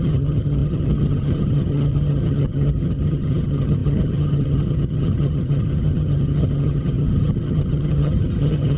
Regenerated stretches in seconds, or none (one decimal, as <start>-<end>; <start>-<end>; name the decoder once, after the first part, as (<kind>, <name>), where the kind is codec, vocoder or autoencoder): 0.0-8.8 (vocoder, HiFi-GAN)